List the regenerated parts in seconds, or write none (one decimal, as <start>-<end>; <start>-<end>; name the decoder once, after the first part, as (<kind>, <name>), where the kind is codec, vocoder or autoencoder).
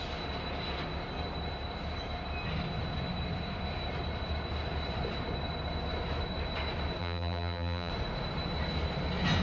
7.0-7.9 (vocoder, BigVGAN v2)